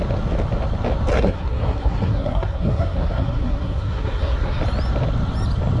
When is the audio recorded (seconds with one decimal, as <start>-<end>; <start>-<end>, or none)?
0.0-1.1; 4.6-5.8